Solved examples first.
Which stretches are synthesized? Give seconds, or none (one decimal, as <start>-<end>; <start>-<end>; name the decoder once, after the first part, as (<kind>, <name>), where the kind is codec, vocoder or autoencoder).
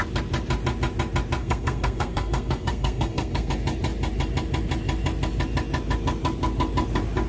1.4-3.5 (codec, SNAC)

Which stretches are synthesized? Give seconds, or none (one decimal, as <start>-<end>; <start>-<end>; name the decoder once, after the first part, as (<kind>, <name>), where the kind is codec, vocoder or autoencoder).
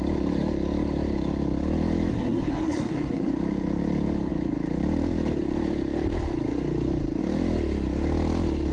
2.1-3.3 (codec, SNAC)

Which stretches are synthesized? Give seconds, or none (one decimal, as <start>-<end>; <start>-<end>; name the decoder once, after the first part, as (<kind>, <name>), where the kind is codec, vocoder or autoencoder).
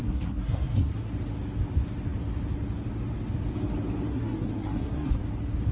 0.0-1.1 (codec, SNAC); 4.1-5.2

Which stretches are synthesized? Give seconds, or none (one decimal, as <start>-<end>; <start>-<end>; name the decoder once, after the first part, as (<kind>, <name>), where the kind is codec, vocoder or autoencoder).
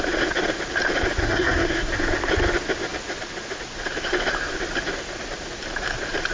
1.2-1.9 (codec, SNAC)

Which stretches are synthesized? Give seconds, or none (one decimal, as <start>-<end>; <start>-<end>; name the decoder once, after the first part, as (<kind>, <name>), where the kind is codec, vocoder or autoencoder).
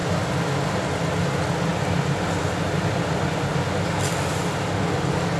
none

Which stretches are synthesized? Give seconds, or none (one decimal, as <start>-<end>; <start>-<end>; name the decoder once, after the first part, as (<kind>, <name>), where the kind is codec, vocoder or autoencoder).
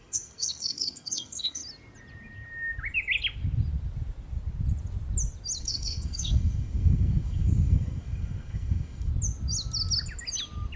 0.0-1.6 (codec, SNAC); 5.6-9.1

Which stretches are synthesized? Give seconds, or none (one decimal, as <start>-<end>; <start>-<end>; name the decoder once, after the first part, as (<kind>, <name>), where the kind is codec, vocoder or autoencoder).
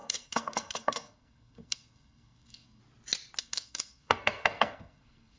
0.0-2.8 (codec, SNAC); 3.4-5.4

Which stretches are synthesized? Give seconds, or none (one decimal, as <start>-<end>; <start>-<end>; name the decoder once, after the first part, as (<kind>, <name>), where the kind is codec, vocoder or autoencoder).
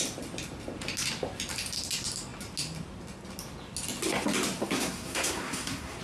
4.6-6.0 (codec, SNAC)